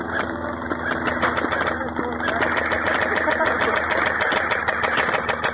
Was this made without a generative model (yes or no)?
yes